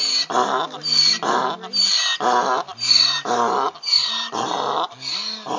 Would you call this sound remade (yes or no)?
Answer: no